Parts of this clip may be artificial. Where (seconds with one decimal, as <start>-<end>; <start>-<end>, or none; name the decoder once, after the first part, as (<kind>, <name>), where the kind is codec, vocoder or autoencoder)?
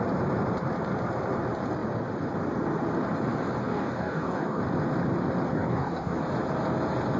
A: 3.6-4.6 (codec, DAC); 5.5-6.2